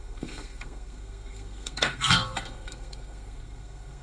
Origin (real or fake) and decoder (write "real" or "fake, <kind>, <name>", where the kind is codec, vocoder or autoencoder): fake, codec, SNAC